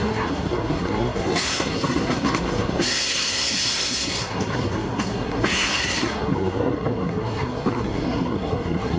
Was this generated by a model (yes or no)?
yes